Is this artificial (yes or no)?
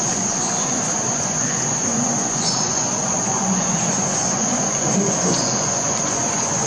yes